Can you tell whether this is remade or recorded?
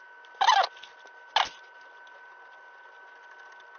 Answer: recorded